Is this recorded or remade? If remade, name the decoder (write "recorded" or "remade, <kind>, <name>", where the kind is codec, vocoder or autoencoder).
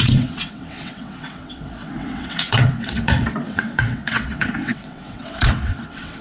remade, vocoder, WaveNeXt